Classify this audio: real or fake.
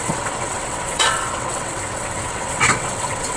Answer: fake